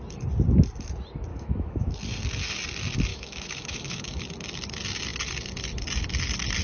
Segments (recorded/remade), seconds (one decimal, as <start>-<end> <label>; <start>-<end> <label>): 0.0-1.3 recorded; 1.3-1.9 remade; 1.9-3.1 recorded; 3.1-4.2 remade; 4.2-6.6 recorded